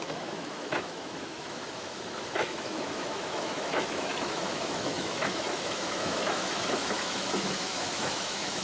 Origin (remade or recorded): remade